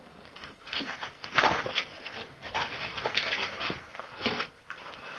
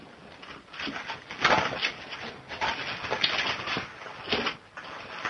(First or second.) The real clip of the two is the second